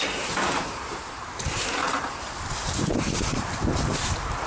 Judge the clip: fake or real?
fake